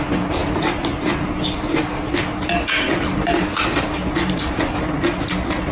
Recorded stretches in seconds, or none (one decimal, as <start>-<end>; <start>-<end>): 0.0-5.7